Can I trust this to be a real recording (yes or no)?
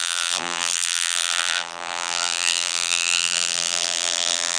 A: no